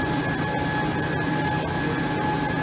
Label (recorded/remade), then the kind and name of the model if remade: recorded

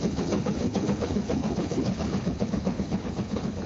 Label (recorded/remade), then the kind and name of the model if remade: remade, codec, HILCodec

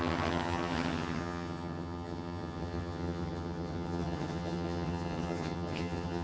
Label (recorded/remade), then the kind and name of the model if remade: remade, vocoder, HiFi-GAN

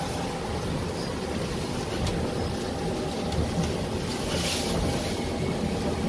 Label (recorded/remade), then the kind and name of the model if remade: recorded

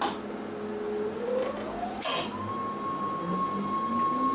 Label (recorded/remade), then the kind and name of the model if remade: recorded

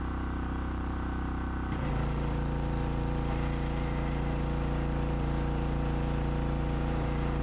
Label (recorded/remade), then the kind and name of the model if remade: remade, vocoder, BigVGAN v2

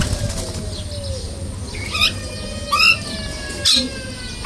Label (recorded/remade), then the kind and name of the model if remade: recorded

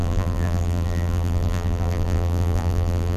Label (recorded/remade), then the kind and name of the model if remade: remade, vocoder, BigVGAN v2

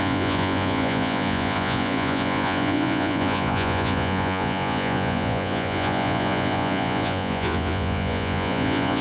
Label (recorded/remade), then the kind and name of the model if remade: remade, vocoder, Vocos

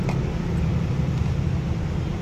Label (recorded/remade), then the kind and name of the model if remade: recorded